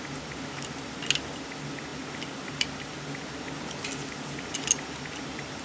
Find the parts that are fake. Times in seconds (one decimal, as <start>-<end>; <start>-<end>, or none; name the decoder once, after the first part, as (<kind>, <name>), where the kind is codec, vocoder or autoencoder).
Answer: none